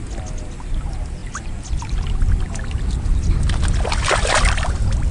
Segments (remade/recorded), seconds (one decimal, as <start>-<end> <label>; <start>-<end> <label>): 0.0-5.1 recorded